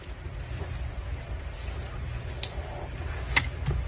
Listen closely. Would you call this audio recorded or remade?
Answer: recorded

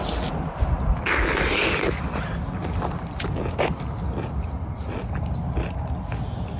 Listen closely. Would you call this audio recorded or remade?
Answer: recorded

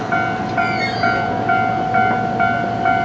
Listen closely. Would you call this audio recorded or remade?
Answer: recorded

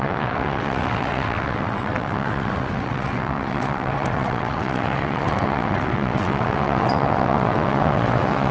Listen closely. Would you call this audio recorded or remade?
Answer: remade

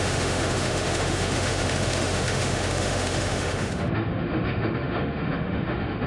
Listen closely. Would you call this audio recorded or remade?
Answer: remade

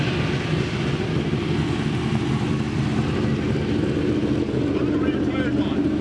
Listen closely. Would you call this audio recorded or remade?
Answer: recorded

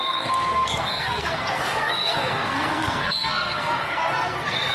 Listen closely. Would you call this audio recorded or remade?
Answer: remade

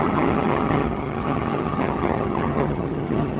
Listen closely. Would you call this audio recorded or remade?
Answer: remade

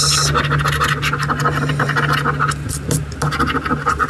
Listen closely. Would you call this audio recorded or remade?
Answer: recorded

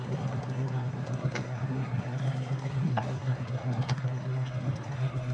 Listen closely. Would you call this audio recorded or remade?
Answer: remade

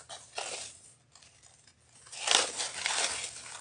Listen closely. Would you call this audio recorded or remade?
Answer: recorded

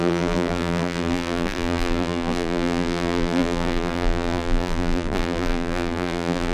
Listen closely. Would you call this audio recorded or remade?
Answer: remade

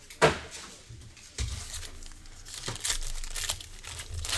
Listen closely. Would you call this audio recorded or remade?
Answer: recorded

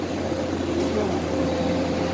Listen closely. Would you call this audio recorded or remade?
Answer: remade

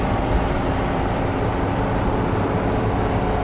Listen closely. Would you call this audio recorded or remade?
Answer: remade